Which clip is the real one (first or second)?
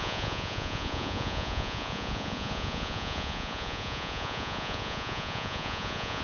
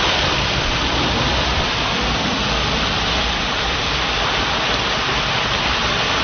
second